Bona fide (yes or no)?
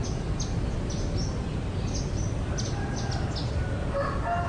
yes